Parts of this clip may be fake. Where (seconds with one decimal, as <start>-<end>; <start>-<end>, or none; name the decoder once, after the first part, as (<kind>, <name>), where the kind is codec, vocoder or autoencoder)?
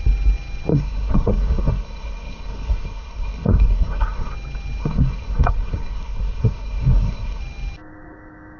0.7-4.3 (codec, SNAC); 4.8-7.4